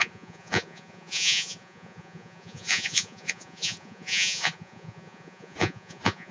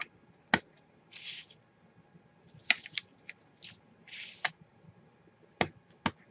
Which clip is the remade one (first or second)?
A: first